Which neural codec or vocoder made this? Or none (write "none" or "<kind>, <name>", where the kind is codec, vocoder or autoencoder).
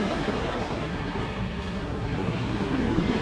codec, SNAC